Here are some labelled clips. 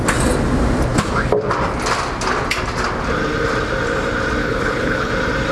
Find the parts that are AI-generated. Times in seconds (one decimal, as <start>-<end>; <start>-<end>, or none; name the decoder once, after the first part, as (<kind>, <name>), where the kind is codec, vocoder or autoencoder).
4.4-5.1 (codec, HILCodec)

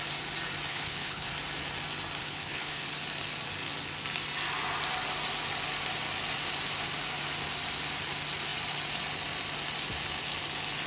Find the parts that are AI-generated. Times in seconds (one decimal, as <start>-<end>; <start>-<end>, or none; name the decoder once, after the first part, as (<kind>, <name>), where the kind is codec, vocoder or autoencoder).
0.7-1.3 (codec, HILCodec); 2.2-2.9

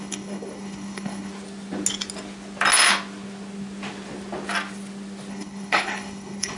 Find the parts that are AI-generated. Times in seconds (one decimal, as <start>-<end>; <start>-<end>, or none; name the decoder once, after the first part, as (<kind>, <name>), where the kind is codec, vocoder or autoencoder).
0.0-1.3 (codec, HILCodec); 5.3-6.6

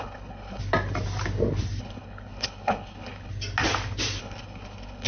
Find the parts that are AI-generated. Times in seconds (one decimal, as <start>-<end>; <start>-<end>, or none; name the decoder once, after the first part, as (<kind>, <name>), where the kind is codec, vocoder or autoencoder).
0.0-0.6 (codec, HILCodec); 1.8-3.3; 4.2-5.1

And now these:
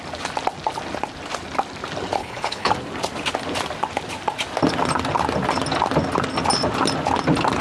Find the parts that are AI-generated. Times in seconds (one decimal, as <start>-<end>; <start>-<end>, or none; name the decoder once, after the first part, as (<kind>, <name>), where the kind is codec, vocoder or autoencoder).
2.2-2.7 (codec, HILCodec)